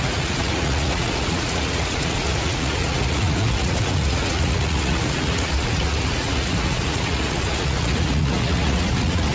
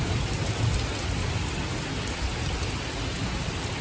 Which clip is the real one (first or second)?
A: second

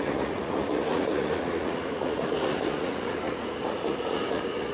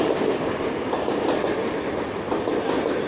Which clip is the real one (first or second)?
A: second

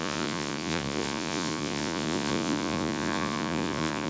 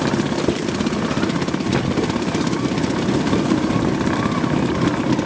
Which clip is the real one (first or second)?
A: second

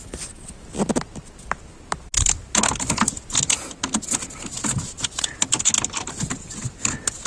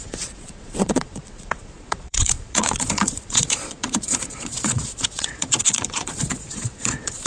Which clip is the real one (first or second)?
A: first